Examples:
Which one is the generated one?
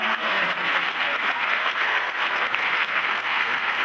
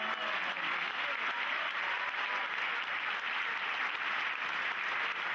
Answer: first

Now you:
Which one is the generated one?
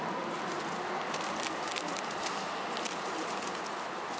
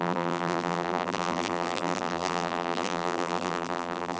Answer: second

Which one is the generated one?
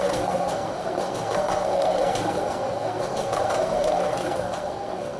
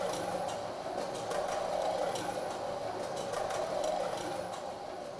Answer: first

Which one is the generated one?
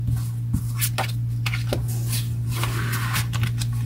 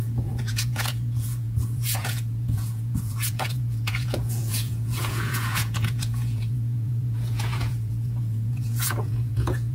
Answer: second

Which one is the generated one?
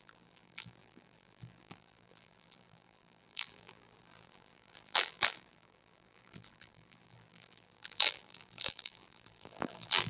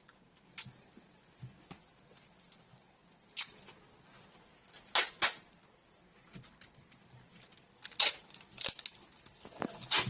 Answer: first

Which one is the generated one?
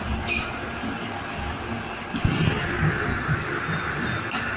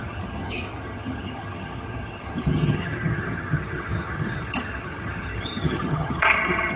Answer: second